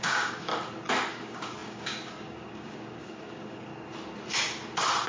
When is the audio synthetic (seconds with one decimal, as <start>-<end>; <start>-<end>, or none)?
0.0-0.5; 1.1-3.7

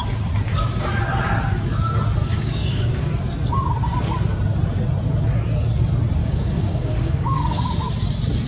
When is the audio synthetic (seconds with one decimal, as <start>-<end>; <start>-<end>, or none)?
2.2-3.1; 6.2-7.6

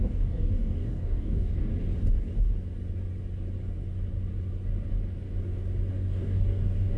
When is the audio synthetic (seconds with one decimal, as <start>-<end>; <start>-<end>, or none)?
0.0-1.7; 5.9-7.0

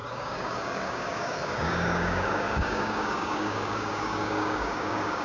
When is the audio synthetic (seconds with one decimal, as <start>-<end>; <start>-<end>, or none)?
0.0-5.2

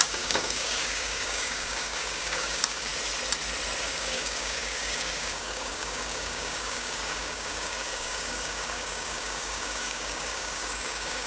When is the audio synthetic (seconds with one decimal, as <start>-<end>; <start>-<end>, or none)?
0.0-2.9; 3.8-11.3

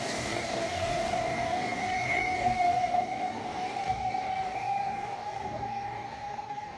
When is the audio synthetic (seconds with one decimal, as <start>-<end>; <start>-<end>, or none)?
0.0-6.8

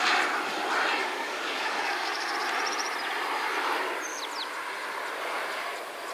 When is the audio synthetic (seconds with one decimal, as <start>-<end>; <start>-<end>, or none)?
1.0-2.3

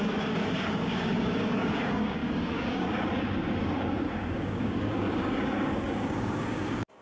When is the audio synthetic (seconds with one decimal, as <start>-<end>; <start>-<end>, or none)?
0.0-7.0